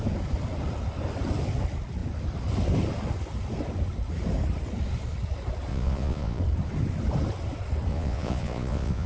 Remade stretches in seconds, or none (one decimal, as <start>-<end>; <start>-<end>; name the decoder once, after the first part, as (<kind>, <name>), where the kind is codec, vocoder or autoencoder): 5.7-6.4 (vocoder, Vocos); 7.9-9.1